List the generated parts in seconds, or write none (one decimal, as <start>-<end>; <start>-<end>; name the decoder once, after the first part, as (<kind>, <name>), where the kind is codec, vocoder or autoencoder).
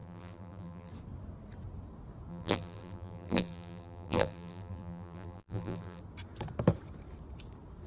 0.0-0.9 (vocoder, BigVGAN v2); 2.3-6.0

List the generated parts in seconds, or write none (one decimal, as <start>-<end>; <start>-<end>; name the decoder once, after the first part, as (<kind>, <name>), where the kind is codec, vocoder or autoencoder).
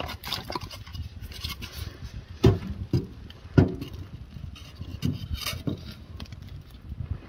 0.9-2.9 (vocoder, BigVGAN v2)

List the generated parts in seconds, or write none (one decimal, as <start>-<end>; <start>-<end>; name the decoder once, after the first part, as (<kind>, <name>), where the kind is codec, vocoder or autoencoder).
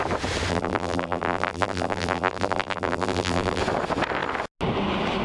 0.5-3.6 (vocoder, BigVGAN v2)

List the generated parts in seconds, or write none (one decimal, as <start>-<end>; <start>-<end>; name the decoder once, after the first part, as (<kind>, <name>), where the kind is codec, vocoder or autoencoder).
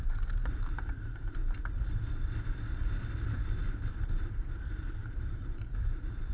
0.0-1.4 (vocoder, BigVGAN v2); 3.9-6.3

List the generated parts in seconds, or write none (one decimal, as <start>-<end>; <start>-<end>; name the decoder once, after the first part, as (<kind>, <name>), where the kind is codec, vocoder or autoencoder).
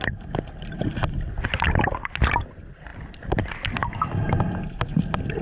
none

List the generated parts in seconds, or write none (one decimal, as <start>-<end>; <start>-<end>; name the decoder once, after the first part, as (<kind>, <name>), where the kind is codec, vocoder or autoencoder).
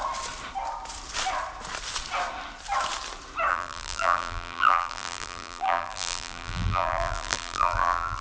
3.5-8.2 (vocoder, BigVGAN v2)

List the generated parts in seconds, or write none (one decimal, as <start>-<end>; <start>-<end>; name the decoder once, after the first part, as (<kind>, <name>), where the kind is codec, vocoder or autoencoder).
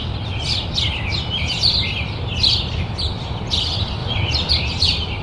2.8-5.2 (vocoder, BigVGAN v2)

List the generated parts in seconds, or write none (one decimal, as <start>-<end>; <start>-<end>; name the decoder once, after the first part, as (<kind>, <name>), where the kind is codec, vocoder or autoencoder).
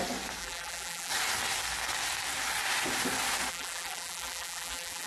0.4-1.1 (vocoder, BigVGAN v2); 3.5-5.1